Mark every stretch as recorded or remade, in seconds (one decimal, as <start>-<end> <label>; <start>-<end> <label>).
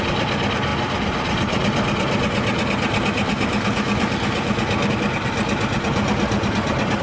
0.0-7.0 recorded